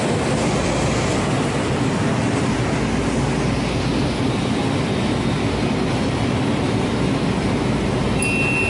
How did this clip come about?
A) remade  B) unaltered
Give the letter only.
B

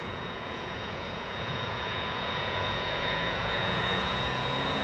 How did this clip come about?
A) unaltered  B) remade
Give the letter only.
B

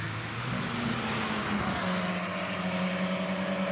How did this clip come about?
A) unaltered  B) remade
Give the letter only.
A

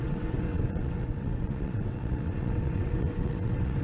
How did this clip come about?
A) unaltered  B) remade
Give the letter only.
B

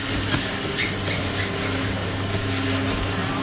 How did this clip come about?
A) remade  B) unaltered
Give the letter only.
B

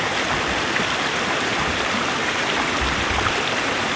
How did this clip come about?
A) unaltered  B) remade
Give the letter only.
A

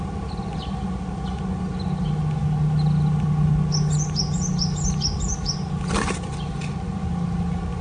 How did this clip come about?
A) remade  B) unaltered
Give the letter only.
B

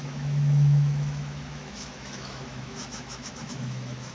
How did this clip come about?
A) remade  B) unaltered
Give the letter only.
A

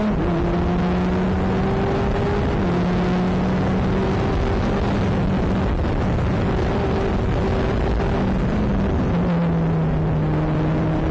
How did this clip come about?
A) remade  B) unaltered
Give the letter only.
B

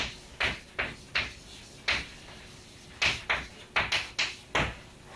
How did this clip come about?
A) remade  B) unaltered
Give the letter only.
B